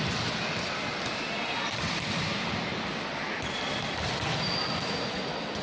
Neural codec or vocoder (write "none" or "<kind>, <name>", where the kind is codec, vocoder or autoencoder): none